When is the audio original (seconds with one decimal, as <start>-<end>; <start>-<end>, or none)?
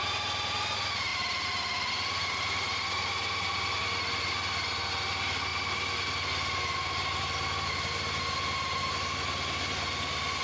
0.0-10.4